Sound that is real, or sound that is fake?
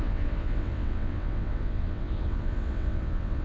fake